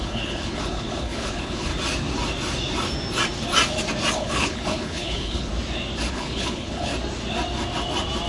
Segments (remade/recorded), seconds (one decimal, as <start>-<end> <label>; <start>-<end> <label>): 0.0-1.7 remade; 1.7-4.1 recorded; 4.1-5.5 remade; 5.5-6.1 recorded; 6.1-6.9 remade; 6.9-8.3 recorded